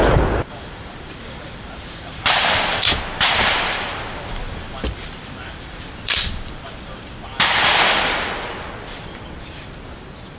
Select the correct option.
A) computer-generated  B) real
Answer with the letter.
A